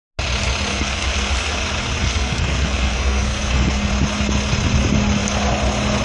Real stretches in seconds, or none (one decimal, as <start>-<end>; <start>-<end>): 0.0-0.7; 1.3-2.0; 3.9-6.0

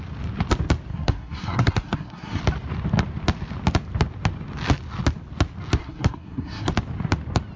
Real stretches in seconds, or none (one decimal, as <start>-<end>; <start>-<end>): 0.0-0.9; 2.4-5.8; 6.7-7.6

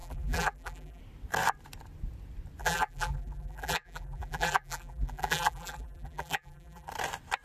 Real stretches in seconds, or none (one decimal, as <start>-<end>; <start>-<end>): 1.0-2.6; 6.9-7.4

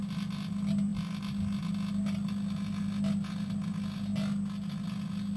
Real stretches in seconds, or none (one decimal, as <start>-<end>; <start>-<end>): 0.0-5.4

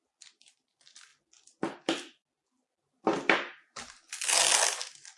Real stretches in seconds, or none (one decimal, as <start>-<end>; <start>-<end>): 0.0-5.2